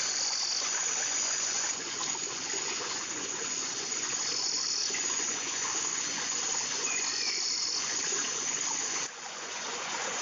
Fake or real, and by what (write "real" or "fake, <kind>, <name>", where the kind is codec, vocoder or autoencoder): fake, vocoder, Vocos